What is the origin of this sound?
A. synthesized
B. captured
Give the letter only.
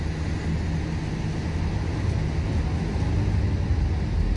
B